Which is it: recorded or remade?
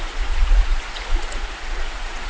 remade